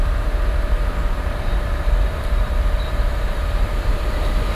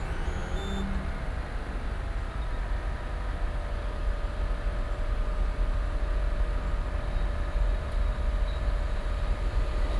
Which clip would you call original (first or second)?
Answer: second